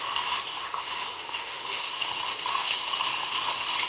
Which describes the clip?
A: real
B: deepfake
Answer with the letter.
B